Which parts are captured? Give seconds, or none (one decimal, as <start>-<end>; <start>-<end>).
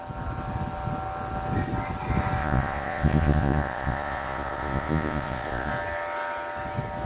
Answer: 0.0-2.4; 5.7-7.1